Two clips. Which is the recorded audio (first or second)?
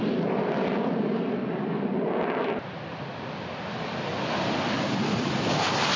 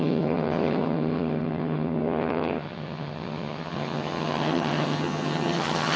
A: first